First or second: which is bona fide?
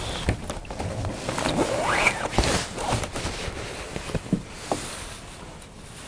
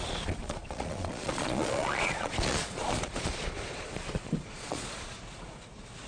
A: first